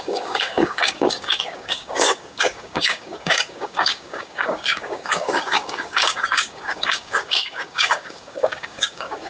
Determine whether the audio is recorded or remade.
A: remade